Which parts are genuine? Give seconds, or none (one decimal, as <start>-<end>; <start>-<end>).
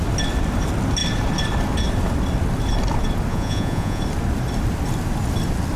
0.0-3.3; 4.0-5.8